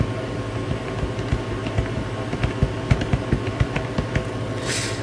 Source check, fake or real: real